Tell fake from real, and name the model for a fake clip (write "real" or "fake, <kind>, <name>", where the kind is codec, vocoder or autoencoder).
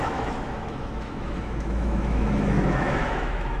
fake, autoencoder, DAC-VAE